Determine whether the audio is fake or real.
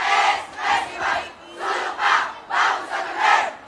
real